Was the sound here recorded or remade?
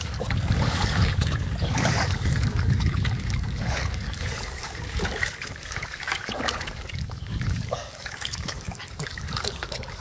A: remade